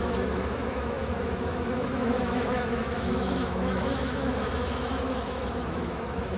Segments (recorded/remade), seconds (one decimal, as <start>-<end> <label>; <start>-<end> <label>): 0.0-6.4 remade